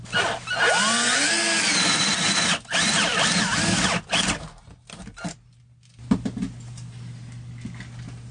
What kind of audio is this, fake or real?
real